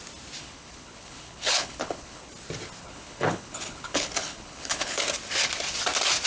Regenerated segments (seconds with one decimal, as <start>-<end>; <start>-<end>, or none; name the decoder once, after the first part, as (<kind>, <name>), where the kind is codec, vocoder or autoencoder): 0.4-2.3 (codec, HILCodec); 2.8-5.0